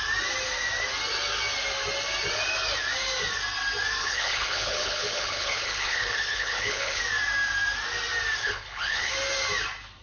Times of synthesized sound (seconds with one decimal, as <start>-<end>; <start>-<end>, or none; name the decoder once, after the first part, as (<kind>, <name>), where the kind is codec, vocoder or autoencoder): 4.0-7.0 (codec, HILCodec); 8.4-9.1